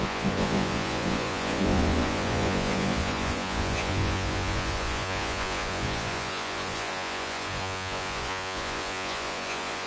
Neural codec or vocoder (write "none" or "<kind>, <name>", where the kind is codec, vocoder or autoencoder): vocoder, Vocos